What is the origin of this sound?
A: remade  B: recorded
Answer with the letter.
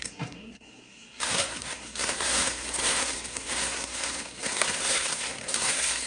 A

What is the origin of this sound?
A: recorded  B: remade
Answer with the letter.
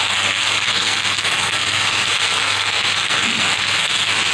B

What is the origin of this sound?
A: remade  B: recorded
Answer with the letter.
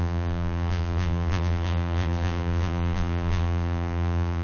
A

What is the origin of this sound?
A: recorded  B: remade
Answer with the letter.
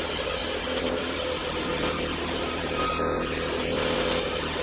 A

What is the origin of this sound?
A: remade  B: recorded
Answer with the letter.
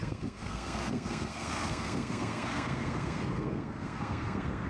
A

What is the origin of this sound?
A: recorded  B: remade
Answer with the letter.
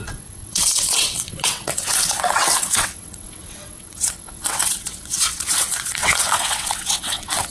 B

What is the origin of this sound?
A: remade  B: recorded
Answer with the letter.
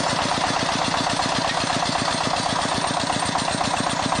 B